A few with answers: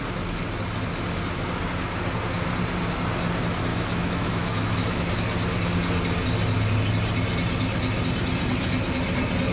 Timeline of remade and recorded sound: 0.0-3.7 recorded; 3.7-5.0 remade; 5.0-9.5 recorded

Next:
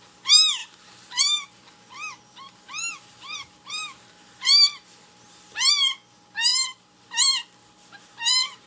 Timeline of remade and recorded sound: 0.0-0.6 recorded; 0.6-5.7 remade; 5.7-6.5 recorded; 6.5-7.1 remade; 7.1-7.6 recorded; 7.6-8.7 remade

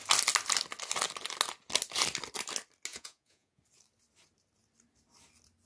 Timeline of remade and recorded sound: 0.0-2.9 recorded; 2.9-3.6 remade; 3.6-5.7 recorded

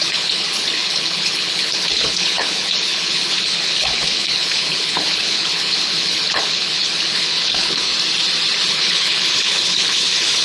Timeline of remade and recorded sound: 0.0-7.9 remade; 7.9-8.7 recorded; 8.7-10.4 remade

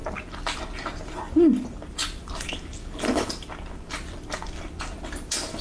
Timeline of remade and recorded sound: 0.0-5.6 recorded

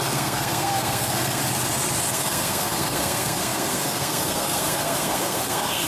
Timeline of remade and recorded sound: 0.0-1.4 remade; 1.4-2.0 recorded; 2.0-5.9 remade

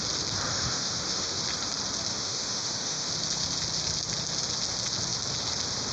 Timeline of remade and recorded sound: 0.0-0.5 recorded; 0.5-1.4 remade; 1.4-2.1 recorded; 2.1-3.1 remade; 3.1-5.9 recorded

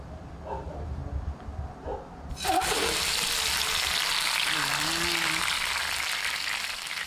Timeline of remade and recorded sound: 0.0-7.1 recorded